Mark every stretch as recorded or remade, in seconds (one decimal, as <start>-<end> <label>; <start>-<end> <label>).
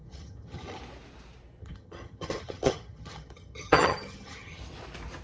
0.0-0.8 remade; 0.8-1.6 recorded; 1.6-4.6 remade; 4.6-5.2 recorded